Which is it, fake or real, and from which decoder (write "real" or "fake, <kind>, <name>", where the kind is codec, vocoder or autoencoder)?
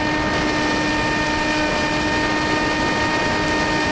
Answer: real